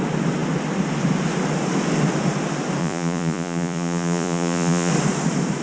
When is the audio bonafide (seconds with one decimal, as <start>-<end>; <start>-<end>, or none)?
0.0-2.8; 4.9-5.6